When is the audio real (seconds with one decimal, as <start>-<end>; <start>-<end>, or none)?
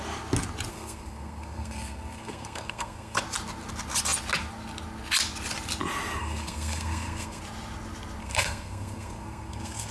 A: 0.0-0.7; 3.2-6.2; 7.4-8.2